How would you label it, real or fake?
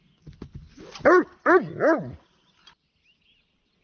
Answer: real